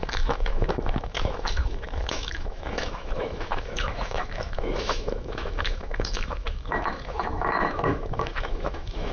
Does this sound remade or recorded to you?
remade